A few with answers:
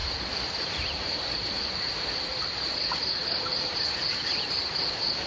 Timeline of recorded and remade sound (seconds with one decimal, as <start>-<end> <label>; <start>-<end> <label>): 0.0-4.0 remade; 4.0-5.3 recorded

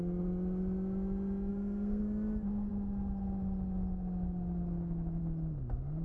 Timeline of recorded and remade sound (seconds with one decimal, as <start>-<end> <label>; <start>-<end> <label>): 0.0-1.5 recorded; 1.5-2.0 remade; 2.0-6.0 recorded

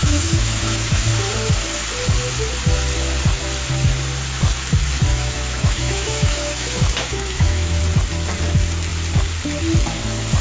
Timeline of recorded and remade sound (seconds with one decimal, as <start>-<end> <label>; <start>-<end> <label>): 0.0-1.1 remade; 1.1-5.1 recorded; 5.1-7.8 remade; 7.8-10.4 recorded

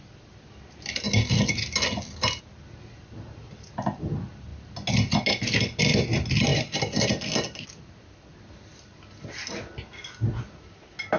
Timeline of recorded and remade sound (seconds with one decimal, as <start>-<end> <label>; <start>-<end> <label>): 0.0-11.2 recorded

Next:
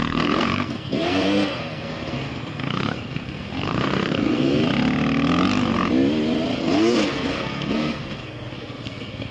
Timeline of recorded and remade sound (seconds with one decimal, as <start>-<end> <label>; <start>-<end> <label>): 0.0-4.6 remade; 4.6-6.6 recorded; 6.6-9.3 remade